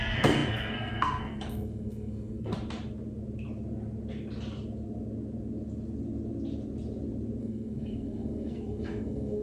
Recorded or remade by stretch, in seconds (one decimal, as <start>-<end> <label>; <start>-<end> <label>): 0.0-2.5 remade; 2.5-7.4 recorded; 7.4-9.4 remade